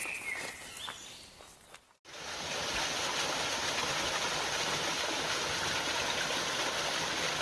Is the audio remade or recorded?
recorded